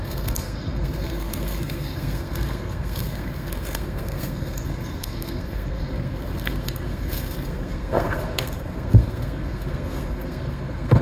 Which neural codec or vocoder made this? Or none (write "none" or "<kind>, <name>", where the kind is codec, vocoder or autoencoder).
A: codec, SNAC